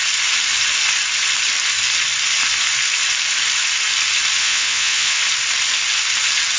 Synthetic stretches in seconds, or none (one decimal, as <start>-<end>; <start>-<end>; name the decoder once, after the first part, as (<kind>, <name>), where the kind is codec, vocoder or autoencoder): 4.4-5.2 (vocoder, Vocos)